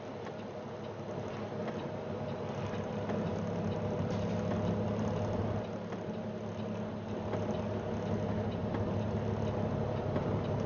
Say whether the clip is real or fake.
real